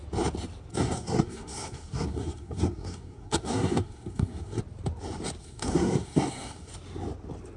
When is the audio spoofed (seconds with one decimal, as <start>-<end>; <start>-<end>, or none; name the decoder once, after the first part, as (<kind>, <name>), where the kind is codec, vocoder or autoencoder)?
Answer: 0.7-4.6 (codec, SNAC); 5.4-6.7